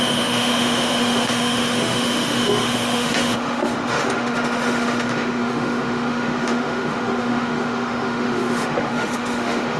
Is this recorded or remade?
remade